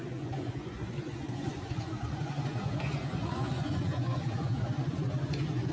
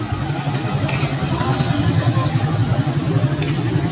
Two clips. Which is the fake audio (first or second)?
first